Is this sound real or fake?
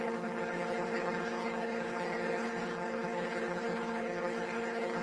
fake